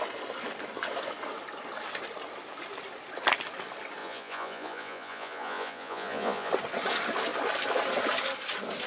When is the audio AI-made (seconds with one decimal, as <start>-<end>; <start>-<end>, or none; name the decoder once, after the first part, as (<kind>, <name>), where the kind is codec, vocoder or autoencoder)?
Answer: 4.0-6.5 (vocoder, Vocos)